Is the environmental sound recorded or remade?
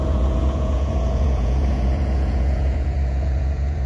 remade